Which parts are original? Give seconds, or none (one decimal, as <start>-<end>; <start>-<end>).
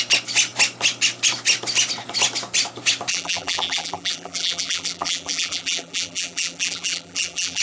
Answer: 0.0-3.1